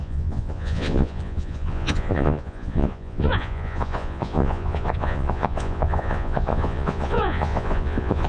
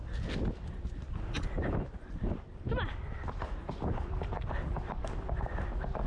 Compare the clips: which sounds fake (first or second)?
first